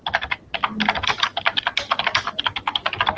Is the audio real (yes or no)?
yes